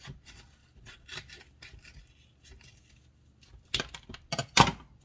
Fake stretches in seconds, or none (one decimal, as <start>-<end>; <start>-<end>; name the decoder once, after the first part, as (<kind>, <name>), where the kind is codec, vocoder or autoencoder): 0.6-1.6 (vocoder, BigVGAN v2)